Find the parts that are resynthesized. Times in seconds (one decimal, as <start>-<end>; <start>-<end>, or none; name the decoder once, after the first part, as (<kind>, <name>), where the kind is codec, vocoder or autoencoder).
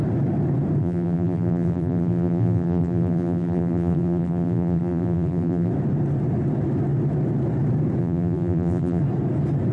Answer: 0.8-5.7 (vocoder, BigVGAN v2); 8.0-9.0